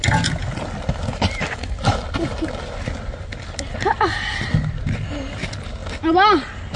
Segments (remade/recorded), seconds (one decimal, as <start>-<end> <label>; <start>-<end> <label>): 0.0-6.8 recorded